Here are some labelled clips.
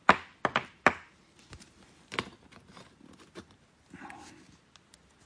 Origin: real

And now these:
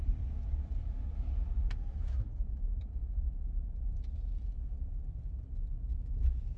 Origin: fake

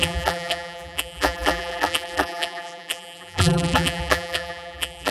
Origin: fake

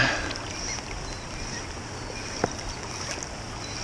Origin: real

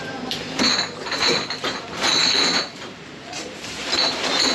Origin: fake